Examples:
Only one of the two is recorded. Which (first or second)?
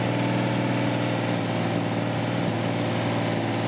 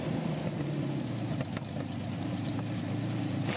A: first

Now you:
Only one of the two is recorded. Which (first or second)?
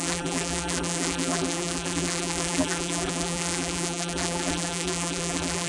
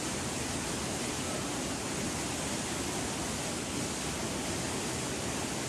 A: second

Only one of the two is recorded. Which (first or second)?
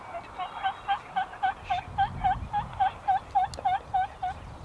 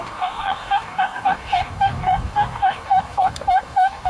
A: first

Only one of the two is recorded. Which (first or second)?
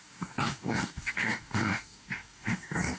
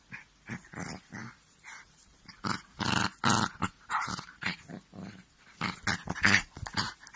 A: second